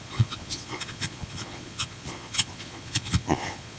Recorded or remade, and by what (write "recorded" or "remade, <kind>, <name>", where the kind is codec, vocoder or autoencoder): remade, vocoder, Vocos